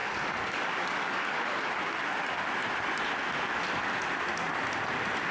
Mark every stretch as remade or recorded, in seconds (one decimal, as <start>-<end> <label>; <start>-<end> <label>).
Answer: 0.0-1.7 remade; 1.7-5.3 recorded